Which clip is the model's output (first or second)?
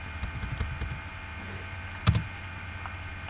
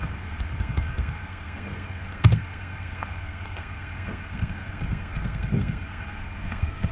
second